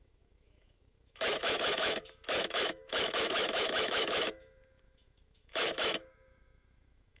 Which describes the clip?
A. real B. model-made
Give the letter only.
B